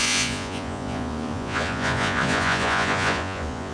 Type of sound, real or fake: fake